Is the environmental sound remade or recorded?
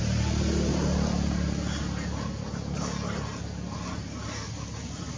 recorded